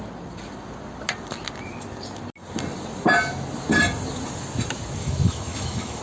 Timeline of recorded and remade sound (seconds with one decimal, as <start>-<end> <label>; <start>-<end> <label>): 0.0-5.0 recorded; 5.0-6.0 remade